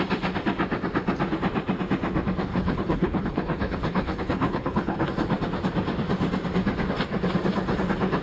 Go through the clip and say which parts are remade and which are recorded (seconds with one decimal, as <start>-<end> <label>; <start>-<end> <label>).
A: 0.0-2.5 recorded; 2.5-5.1 remade; 5.1-8.2 recorded